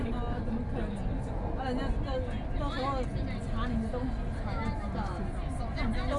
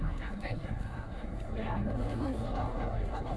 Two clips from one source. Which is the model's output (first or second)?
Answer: second